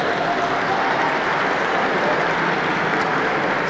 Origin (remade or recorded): recorded